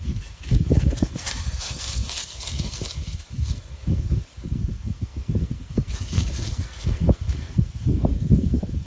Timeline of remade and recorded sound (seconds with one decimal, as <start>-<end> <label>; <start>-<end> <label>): 0.0-8.9 remade